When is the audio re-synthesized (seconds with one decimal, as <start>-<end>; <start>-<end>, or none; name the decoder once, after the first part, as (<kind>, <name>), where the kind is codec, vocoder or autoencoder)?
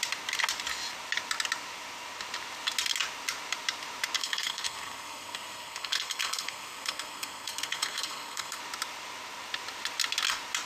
4.2-8.6 (codec, SNAC)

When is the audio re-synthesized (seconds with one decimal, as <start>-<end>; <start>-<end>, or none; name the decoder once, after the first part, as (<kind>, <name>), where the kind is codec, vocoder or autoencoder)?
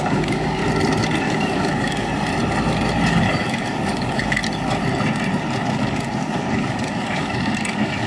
0.0-0.6 (codec, DAC); 1.2-2.1; 3.1-4.4; 5.6-8.1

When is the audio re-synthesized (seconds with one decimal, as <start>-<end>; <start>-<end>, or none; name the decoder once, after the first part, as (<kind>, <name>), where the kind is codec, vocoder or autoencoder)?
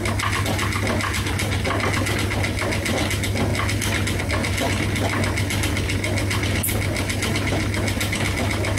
none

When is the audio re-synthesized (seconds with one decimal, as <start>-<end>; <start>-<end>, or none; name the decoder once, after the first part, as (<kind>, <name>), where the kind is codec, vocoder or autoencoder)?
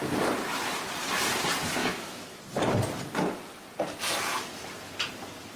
1.8-2.4 (autoencoder, DAC-VAE)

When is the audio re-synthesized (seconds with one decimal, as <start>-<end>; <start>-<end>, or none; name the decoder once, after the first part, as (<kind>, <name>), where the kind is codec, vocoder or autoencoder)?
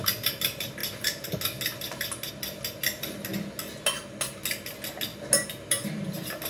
none